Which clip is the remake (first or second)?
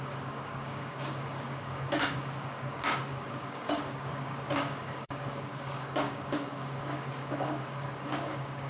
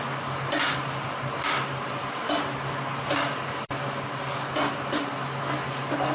first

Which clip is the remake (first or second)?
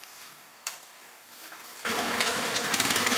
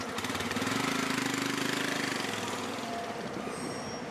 first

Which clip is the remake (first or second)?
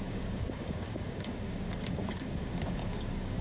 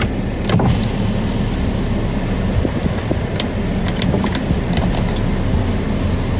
first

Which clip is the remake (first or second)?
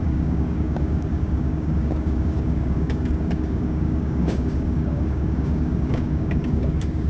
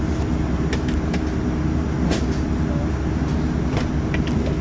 first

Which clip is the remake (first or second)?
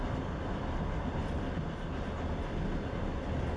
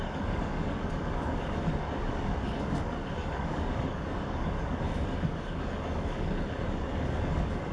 second